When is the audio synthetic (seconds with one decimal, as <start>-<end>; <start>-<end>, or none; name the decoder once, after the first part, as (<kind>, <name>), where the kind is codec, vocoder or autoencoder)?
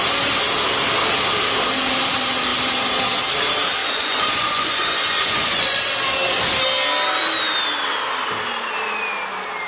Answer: 3.8-5.8 (vocoder, Vocos)